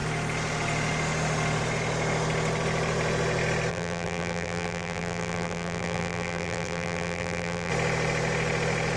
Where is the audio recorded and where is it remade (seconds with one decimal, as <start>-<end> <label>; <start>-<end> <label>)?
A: 0.0-3.7 recorded; 3.7-7.7 remade; 7.7-9.0 recorded